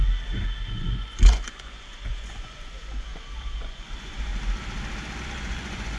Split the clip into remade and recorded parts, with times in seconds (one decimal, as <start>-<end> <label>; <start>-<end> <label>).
0.0-0.7 recorded; 0.7-4.3 remade; 4.3-5.2 recorded; 5.2-6.0 remade